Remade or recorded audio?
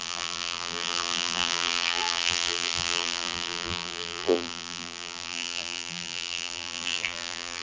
remade